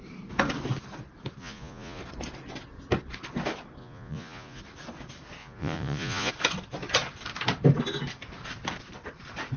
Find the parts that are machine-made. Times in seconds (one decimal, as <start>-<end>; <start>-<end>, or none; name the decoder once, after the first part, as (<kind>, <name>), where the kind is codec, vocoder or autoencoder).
1.4-2.0 (vocoder, Vocos); 3.8-4.6; 5.4-6.3